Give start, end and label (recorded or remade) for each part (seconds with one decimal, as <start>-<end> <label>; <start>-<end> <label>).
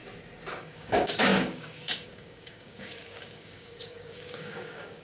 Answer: 0.0-0.6 recorded; 0.6-5.0 remade